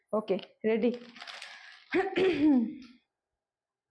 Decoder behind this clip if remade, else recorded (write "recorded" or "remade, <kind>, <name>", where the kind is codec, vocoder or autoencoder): recorded